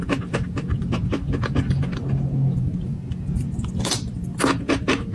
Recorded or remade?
recorded